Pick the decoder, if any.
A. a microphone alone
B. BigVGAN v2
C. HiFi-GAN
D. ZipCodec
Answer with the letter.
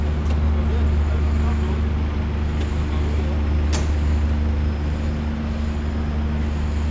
A